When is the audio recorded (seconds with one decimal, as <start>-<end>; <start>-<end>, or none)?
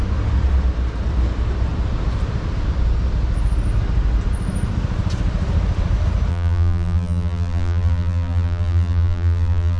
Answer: 0.0-6.3